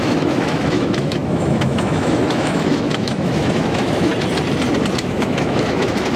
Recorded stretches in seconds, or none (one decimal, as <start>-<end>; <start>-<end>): 4.1-5.0